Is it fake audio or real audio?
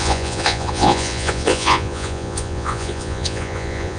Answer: fake